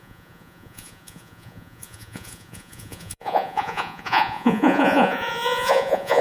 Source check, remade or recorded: remade